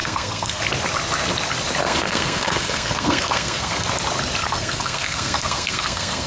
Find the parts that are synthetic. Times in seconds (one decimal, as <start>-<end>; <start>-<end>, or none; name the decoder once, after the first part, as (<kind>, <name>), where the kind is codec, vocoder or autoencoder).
0.0-0.6 (codec, SNAC); 1.8-3.9; 4.4-6.3